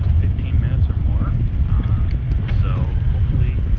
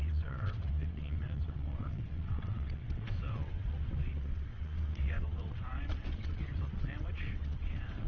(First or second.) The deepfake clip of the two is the second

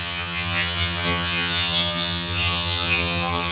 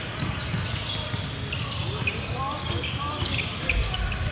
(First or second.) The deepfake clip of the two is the first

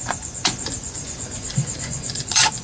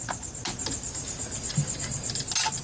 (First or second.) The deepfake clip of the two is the first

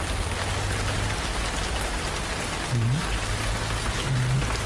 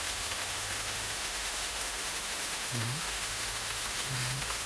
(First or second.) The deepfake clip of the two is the second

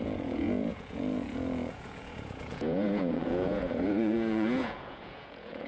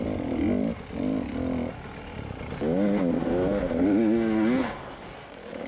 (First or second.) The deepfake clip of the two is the first